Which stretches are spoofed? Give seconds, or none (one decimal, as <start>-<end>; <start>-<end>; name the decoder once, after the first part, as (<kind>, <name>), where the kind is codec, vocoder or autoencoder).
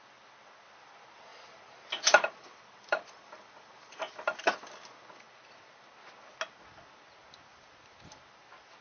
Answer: 1.3-4.5 (vocoder, BigVGAN v2)